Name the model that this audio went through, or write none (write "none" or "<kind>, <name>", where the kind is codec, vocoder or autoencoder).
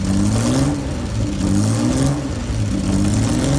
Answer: none